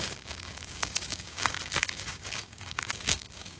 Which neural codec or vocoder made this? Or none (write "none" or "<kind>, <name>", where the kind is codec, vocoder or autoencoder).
codec, DAC